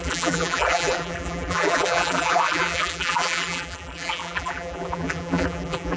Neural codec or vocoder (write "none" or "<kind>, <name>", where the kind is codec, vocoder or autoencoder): vocoder, BigVGAN v2